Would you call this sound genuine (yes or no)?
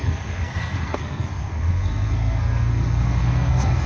no